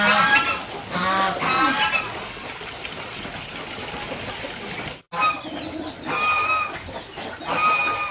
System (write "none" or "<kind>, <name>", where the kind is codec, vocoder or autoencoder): none